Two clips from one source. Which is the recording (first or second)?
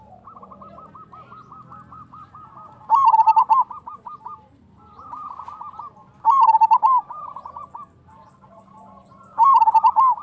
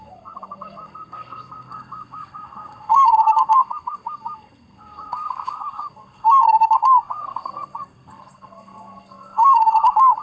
first